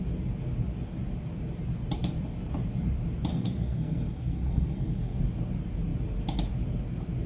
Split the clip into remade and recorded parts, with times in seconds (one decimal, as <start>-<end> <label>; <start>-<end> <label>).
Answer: 0.0-3.3 recorded; 3.3-5.2 remade; 5.2-7.3 recorded